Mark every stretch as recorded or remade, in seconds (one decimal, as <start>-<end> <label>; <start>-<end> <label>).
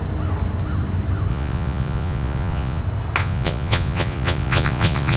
0.0-1.3 recorded; 1.3-2.8 remade; 2.8-3.2 recorded; 3.2-5.2 remade